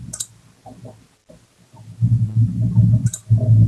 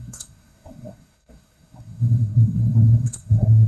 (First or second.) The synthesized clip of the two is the second